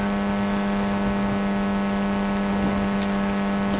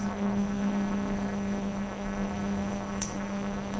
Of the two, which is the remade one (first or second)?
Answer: second